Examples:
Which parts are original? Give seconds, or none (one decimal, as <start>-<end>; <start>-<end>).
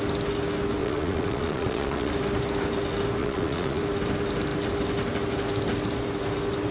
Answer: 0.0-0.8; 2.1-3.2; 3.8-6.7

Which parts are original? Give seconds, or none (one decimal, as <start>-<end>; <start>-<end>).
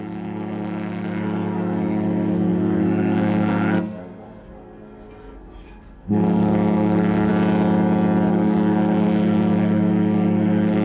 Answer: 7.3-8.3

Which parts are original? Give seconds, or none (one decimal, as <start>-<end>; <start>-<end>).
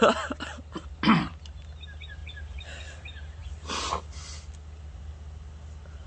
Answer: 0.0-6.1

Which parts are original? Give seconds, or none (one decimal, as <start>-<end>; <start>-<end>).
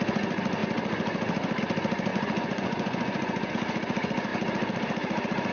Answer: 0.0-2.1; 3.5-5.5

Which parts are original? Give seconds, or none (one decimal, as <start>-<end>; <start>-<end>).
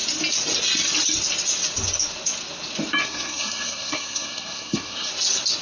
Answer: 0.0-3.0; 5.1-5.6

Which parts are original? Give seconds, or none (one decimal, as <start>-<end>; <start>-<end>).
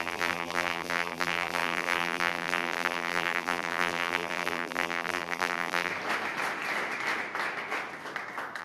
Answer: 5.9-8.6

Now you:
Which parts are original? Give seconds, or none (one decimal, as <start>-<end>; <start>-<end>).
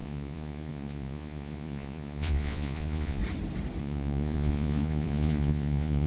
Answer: 3.2-3.8